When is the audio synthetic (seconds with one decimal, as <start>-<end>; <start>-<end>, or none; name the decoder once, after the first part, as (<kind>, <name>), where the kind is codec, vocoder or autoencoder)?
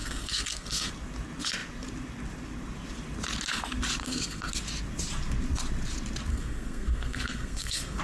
0.0-0.9 (codec, SNAC); 4.0-4.5; 6.3-8.0